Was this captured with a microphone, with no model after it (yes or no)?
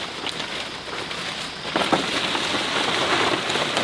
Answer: yes